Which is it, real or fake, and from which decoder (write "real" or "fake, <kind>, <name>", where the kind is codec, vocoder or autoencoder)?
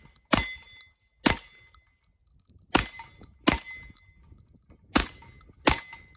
real